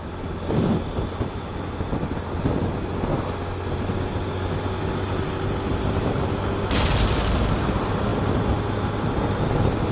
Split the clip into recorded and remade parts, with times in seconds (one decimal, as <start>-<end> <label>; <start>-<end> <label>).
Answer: 0.0-9.9 recorded